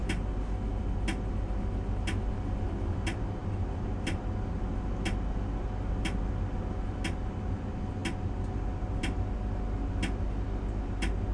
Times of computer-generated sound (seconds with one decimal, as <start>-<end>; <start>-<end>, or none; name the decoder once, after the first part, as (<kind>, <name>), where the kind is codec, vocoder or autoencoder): none